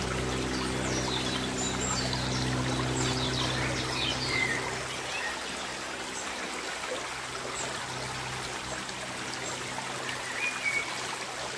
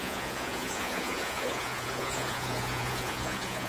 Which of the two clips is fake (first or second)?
second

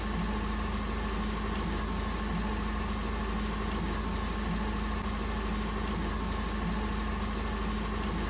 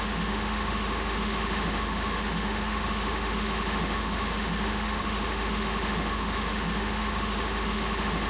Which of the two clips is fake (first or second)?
second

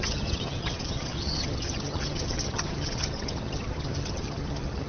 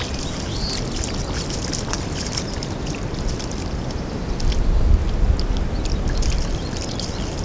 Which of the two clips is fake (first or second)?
first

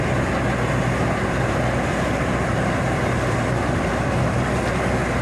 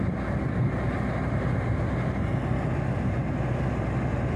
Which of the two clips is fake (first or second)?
first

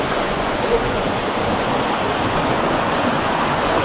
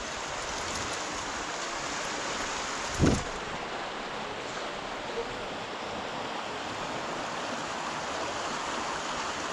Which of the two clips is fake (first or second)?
first